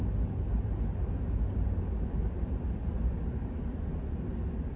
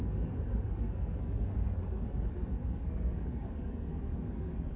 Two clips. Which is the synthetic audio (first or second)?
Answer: second